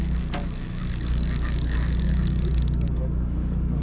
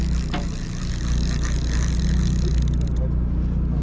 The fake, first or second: first